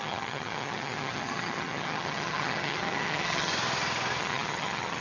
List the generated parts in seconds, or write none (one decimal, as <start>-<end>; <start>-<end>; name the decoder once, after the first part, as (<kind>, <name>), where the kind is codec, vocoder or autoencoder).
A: 0.0-3.5 (vocoder, HiFi-GAN); 4.2-5.0